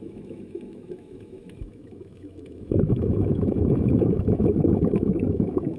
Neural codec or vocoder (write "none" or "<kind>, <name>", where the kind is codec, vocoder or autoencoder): autoencoder, DAC-VAE